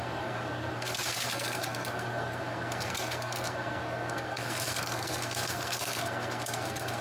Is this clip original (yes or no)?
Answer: no